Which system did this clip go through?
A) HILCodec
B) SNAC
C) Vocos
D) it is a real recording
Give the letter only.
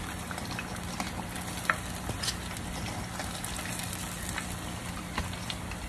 D